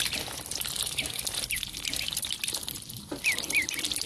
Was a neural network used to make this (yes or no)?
no